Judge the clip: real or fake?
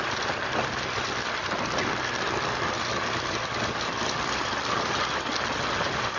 real